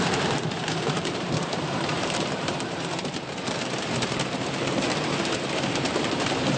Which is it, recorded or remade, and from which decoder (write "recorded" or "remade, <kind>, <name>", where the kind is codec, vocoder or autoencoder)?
remade, vocoder, BigVGAN v2